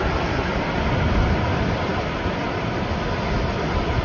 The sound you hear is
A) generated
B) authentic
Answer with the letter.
B